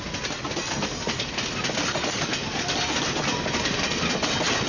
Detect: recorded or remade recorded